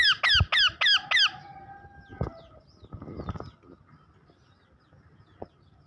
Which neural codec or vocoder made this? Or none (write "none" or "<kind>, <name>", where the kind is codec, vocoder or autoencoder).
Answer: none